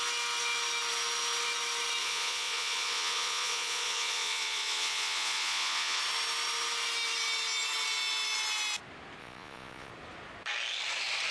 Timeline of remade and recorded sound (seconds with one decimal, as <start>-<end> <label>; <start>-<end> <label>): 0.0-2.0 recorded; 2.0-6.0 remade; 6.0-9.2 recorded; 9.2-9.9 remade; 9.9-11.3 recorded